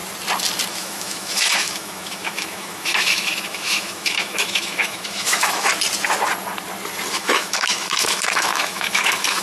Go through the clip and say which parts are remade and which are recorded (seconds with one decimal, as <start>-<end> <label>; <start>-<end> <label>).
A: 0.0-0.7 recorded; 0.7-5.7 remade; 5.7-7.1 recorded; 7.1-9.4 remade